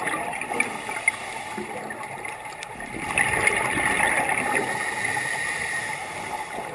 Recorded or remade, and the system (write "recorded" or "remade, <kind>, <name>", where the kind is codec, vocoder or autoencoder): recorded